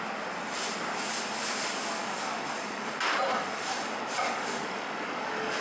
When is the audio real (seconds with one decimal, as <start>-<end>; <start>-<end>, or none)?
0.0-2.0; 2.9-3.3